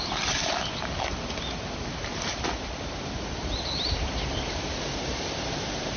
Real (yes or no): no